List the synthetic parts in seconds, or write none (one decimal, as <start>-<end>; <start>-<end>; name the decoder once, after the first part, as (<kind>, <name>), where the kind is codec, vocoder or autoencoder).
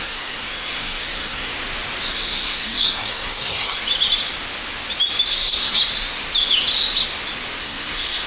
0.0-1.5 (codec, SNAC); 2.1-3.8; 5.3-5.8; 7.6-8.3